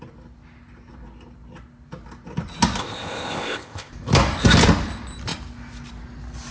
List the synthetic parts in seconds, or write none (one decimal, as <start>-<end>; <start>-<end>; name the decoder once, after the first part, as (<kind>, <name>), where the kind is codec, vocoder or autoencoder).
2.8-3.9 (codec, ZipCodec)